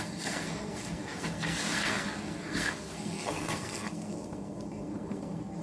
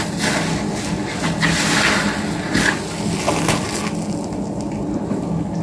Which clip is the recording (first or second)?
second